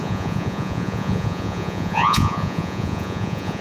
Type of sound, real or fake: fake